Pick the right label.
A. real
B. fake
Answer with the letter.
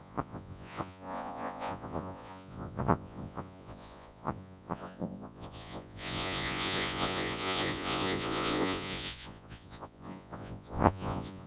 B